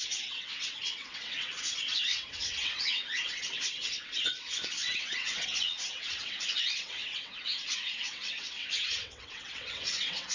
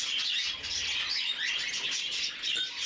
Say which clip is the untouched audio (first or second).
second